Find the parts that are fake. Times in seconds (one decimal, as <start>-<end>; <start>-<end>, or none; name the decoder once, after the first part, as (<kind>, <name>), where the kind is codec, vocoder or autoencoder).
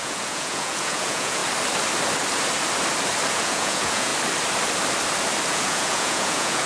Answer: 0.0-1.4 (vocoder, Vocos); 3.3-4.1; 5.5-6.7